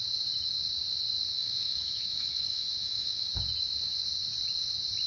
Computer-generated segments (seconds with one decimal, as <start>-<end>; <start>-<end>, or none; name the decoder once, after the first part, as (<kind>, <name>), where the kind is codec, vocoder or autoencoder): 1.4-3.3 (autoencoder, DAC-VAE)

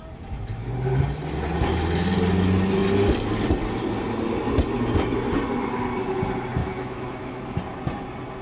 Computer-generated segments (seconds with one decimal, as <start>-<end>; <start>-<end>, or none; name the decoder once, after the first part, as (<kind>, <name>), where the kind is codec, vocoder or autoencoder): 6.6-7.6 (autoencoder, DAC-VAE)

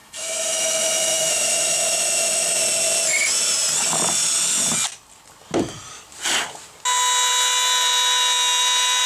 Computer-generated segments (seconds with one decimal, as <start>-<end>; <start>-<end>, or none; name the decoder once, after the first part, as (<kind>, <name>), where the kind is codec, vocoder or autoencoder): 0.0-2.6 (autoencoder, DAC-VAE)

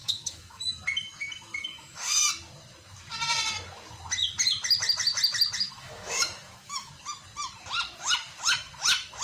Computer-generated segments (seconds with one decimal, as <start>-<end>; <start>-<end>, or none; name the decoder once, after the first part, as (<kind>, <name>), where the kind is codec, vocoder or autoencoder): 0.0-0.6 (autoencoder, DAC-VAE); 1.5-2.3; 5.7-6.9